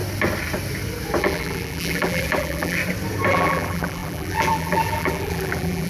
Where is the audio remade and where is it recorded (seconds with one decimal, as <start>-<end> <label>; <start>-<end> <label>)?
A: 0.0-1.2 recorded; 1.2-2.8 remade; 2.8-3.3 recorded; 3.3-5.9 remade